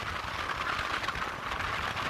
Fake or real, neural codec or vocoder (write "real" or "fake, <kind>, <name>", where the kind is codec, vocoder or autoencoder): real